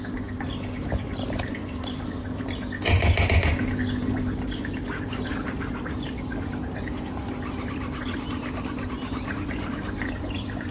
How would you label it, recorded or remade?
recorded